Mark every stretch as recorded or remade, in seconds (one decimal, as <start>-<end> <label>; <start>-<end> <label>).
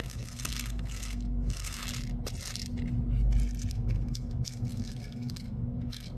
0.0-1.8 remade; 1.8-3.7 recorded; 3.7-6.2 remade